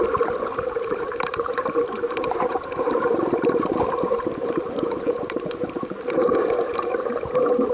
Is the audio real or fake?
fake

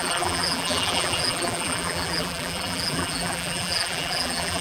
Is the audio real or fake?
fake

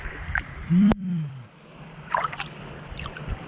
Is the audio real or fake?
fake